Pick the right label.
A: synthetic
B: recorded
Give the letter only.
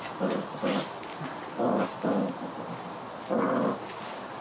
B